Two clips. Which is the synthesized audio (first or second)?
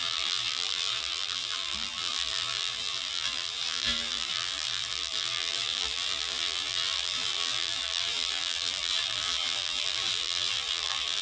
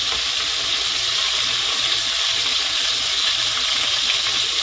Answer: first